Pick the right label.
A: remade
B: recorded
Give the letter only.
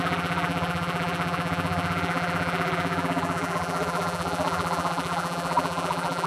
A